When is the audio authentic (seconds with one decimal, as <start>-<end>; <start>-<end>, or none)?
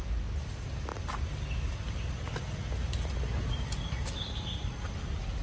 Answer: 0.0-5.4